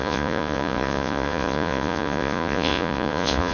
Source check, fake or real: fake